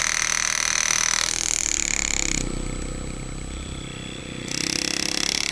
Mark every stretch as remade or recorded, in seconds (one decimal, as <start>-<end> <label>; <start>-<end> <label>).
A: 0.0-1.6 recorded; 1.6-4.2 remade; 4.2-5.5 recorded